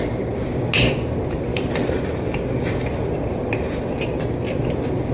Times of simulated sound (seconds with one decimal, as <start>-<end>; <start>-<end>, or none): 1.5-4.0